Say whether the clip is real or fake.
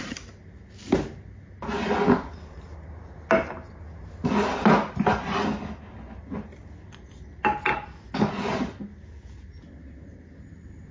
real